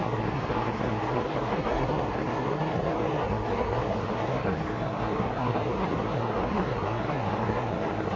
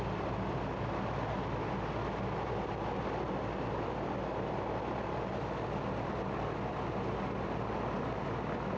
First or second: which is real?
second